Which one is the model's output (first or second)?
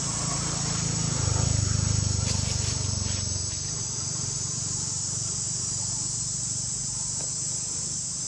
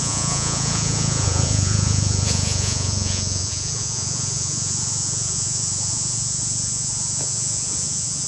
second